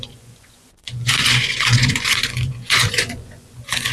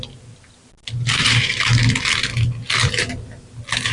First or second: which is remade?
first